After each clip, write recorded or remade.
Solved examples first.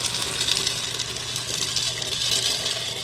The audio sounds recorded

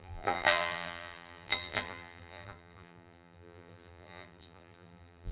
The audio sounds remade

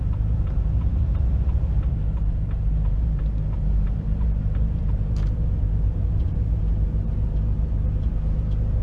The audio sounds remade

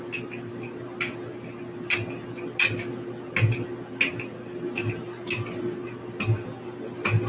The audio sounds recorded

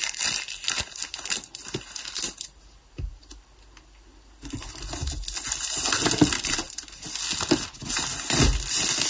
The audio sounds recorded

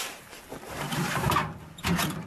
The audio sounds remade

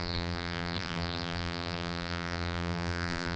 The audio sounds remade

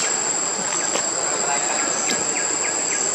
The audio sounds recorded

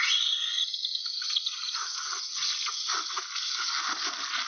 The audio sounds recorded